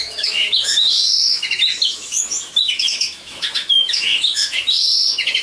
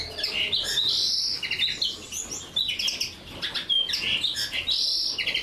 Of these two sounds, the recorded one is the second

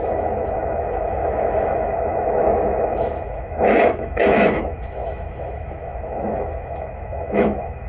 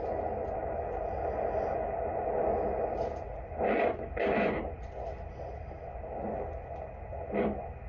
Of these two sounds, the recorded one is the second